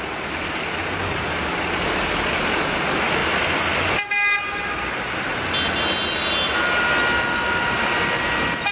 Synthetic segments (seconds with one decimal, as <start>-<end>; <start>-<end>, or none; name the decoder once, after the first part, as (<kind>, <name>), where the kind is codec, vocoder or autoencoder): none